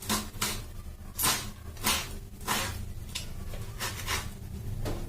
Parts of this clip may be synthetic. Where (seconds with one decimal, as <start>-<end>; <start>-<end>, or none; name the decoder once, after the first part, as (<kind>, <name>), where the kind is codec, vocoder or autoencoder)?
2.7-4.1 (vocoder, BigVGAN v2)

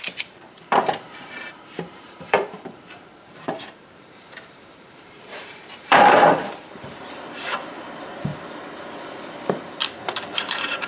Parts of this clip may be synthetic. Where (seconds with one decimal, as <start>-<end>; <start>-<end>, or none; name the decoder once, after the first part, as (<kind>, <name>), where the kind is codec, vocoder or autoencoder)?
0.0-8.3 (vocoder, BigVGAN v2); 10.0-10.9

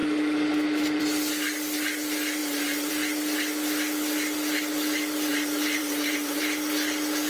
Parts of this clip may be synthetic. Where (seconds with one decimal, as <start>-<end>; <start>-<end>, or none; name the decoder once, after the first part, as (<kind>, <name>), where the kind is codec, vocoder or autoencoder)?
2.4-2.9 (vocoder, BigVGAN v2); 5.3-6.4

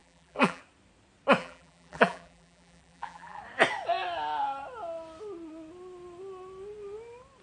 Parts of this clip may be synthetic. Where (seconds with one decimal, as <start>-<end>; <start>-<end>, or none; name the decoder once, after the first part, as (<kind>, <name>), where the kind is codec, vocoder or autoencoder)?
0.0-0.6 (vocoder, BigVGAN v2); 1.4-3.4

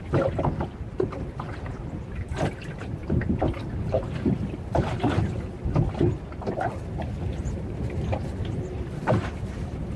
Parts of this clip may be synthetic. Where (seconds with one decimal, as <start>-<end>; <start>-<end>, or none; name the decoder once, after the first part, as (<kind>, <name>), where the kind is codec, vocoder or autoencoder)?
none